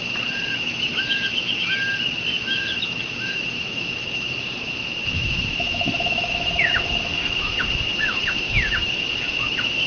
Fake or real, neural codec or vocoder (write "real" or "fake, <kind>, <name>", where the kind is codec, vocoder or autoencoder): fake, autoencoder, DAC-VAE